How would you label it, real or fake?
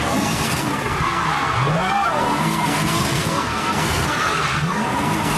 fake